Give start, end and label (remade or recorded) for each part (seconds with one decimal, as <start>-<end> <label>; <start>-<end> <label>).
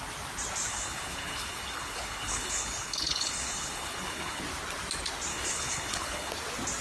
0.0-0.7 recorded; 0.7-4.4 remade; 4.4-5.3 recorded; 5.3-6.3 remade; 6.3-6.8 recorded